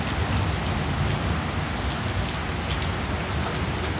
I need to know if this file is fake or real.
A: real